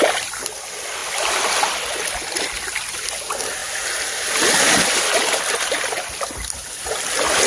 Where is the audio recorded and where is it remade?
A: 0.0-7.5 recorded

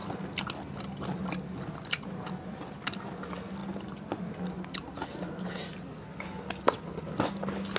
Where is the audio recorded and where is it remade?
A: 0.0-7.8 recorded

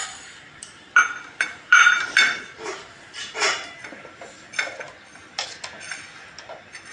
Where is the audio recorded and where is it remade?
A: 0.0-4.1 remade; 4.1-6.9 recorded

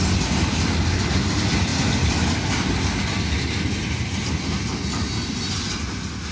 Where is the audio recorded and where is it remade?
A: 0.0-1.7 recorded; 1.7-5.5 remade; 5.5-6.3 recorded

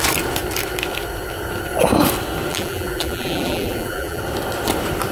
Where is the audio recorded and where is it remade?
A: 0.0-2.5 recorded; 2.5-4.2 remade; 4.2-5.1 recorded